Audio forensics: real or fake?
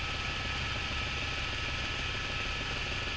real